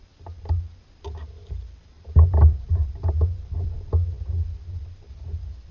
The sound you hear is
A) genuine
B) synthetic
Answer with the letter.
A